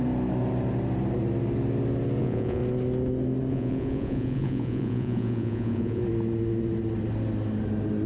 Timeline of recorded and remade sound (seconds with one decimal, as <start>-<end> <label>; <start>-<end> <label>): 0.0-2.2 recorded; 2.2-2.6 remade; 2.6-3.5 recorded; 3.5-6.0 remade; 6.0-8.1 recorded